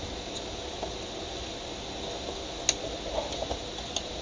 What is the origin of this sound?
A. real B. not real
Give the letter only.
A